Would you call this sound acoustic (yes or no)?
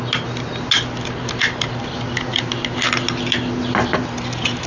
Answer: yes